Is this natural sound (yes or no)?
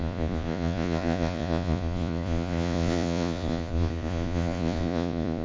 no